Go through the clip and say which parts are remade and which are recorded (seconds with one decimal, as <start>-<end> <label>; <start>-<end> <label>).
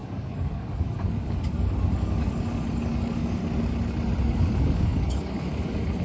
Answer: 0.0-3.4 remade; 3.4-4.2 recorded; 4.2-6.0 remade